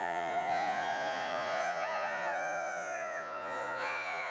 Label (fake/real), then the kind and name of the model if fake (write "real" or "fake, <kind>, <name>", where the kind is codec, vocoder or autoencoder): fake, vocoder, Vocos